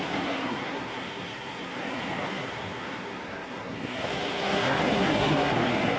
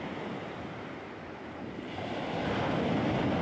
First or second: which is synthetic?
first